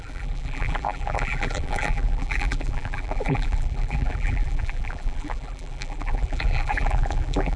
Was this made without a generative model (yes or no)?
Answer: no